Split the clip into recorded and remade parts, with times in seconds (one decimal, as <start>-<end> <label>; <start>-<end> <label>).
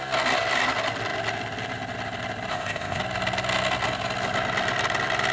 0.0-2.5 recorded; 2.5-3.0 remade; 3.0-5.3 recorded